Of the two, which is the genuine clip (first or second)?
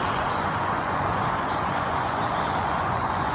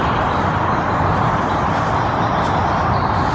second